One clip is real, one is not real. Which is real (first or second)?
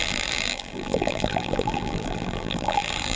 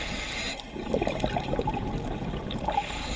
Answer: second